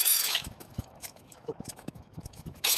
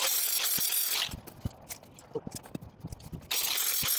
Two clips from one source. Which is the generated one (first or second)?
first